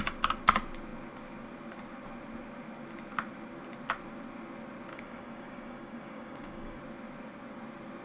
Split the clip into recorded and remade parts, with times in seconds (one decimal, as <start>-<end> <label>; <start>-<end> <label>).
0.0-4.9 recorded; 4.9-6.8 remade; 6.8-8.0 recorded